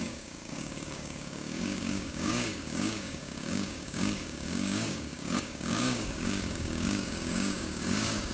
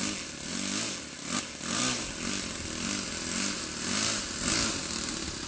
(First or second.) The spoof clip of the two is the first